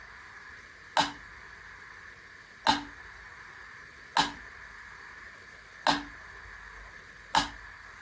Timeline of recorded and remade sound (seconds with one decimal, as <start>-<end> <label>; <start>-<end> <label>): 0.0-8.0 recorded

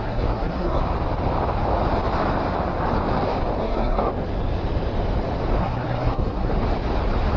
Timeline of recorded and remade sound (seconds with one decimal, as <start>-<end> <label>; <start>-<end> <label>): 0.0-0.8 remade; 0.8-3.6 recorded; 3.6-4.1 remade; 4.1-5.6 recorded; 5.6-6.5 remade; 6.5-7.4 recorded